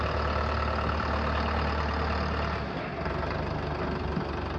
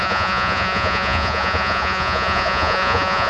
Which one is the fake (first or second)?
second